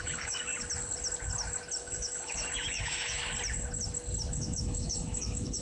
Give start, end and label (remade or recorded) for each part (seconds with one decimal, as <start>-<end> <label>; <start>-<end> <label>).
0.0-0.5 remade; 0.5-1.8 recorded; 1.8-3.2 remade; 3.2-4.3 recorded; 4.3-5.6 remade